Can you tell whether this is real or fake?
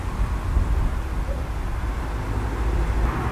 real